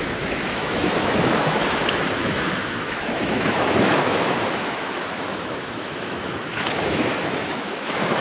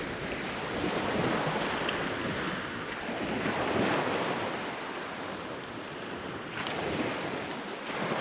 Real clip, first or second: second